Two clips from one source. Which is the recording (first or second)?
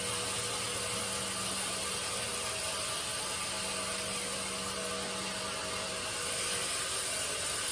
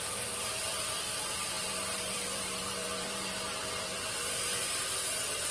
first